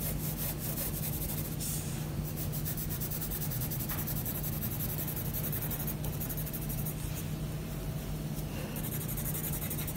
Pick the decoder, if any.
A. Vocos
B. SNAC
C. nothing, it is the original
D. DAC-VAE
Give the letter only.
C